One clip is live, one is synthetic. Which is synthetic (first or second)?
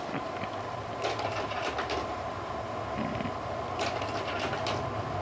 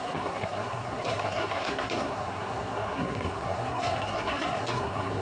second